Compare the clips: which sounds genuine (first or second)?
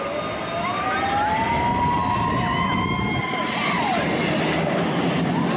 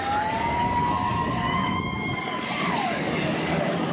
first